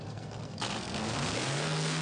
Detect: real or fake fake